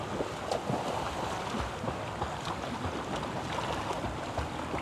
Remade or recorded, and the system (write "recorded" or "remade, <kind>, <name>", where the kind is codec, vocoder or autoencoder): recorded